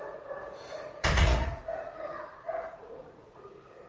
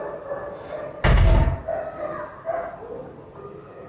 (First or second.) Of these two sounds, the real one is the second